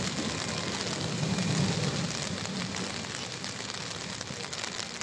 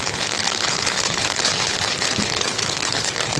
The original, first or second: first